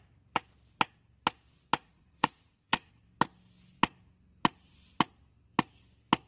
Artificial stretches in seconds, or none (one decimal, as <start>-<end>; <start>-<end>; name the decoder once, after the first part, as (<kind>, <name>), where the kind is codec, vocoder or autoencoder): 1.8-2.9 (vocoder, Vocos)